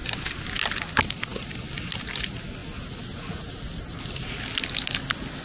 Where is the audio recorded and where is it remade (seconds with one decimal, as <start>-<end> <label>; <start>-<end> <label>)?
0.0-5.4 recorded